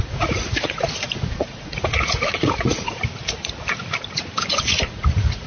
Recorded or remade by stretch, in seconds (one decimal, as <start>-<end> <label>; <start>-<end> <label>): 0.0-3.0 remade; 3.0-4.5 recorded; 4.5-5.5 remade